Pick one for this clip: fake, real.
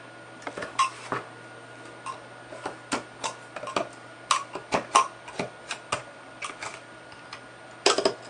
real